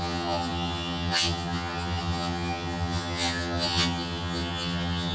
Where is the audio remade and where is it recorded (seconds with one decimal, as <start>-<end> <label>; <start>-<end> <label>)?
0.0-5.1 remade